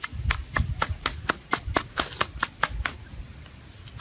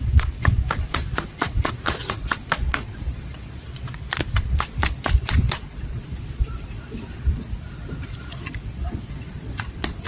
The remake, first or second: second